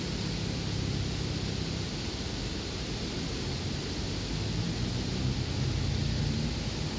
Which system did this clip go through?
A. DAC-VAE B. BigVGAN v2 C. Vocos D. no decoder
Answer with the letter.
D